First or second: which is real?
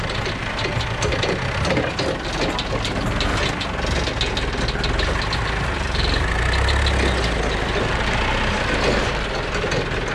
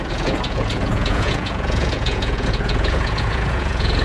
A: first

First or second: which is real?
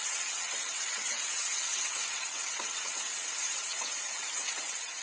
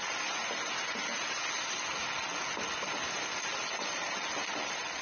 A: second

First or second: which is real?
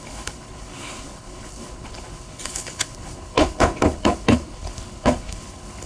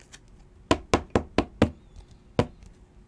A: second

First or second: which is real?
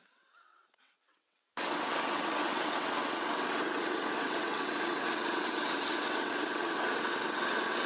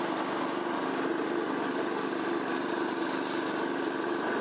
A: second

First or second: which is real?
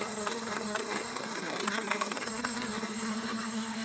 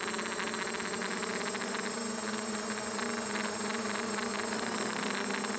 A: second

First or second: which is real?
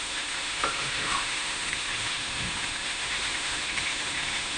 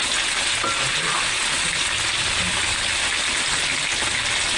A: second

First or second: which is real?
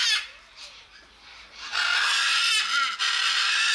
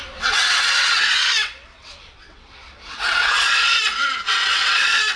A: first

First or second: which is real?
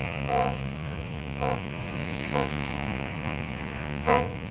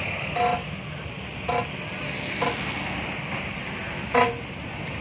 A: second